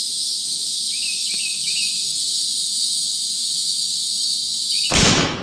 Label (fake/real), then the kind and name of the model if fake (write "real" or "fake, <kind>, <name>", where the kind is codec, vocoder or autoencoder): fake, autoencoder, DAC-VAE